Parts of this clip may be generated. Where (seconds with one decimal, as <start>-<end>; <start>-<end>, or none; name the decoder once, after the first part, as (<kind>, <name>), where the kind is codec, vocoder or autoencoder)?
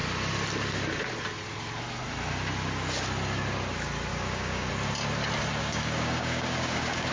4.1-4.7 (codec, DAC); 5.6-7.1